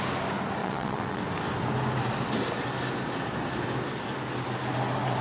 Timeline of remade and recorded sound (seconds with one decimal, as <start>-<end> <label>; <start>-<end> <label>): 0.0-0.6 recorded; 0.6-1.2 remade; 1.2-5.2 recorded